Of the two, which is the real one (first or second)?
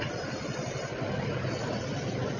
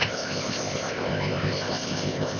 first